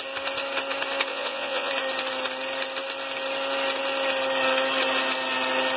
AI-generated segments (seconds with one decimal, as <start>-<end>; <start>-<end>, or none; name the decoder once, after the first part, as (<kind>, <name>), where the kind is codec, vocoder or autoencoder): 1.1-1.7 (vocoder, Vocos)